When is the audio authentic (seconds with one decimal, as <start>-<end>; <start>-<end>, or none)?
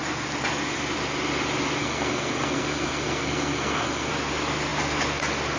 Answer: 0.0-1.8; 4.1-5.6